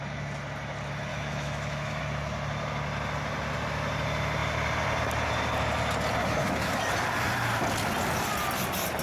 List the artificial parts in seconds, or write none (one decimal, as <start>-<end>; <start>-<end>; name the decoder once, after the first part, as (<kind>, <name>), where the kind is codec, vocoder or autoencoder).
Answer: 1.1-2.0 (autoencoder, DAC-VAE); 6.2-6.8